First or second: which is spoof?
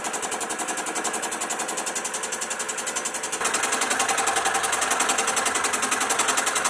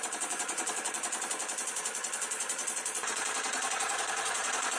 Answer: second